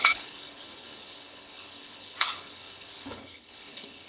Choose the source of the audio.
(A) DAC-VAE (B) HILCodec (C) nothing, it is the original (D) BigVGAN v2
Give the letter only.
B